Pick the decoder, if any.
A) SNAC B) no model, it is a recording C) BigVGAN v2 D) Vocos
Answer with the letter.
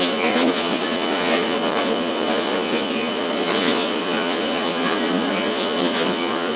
D